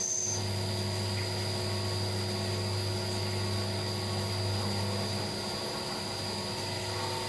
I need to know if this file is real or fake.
real